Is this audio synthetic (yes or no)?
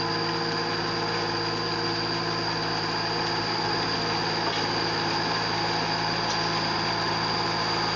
no